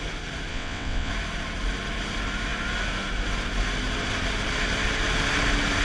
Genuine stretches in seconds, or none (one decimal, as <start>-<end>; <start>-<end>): 0.0-0.5; 1.1-5.8